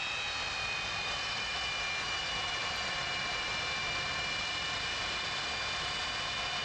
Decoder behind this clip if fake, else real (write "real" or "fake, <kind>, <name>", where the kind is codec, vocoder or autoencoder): real